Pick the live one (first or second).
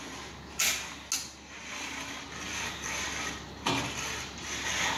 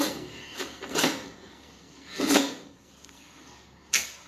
first